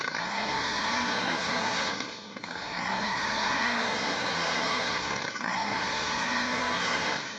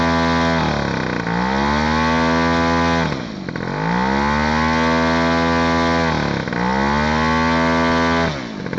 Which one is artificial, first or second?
first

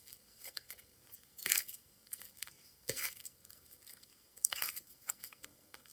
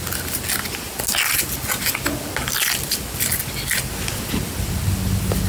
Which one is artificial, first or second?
first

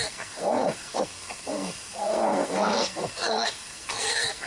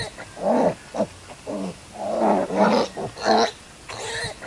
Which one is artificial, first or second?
first